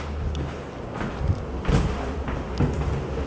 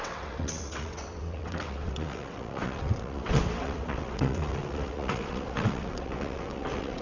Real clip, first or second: first